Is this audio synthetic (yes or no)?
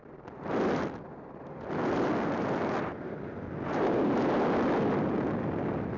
no